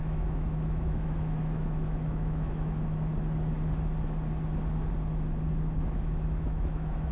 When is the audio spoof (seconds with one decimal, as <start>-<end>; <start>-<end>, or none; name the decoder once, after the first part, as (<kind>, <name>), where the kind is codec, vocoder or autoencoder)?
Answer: 0.0-3.1 (autoencoder, DAC-VAE); 5.6-7.1